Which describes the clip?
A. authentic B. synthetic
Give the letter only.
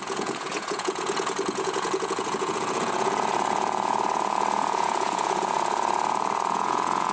B